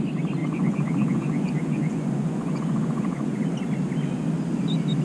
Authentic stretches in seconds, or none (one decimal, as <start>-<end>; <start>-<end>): 0.0-0.4; 3.4-5.0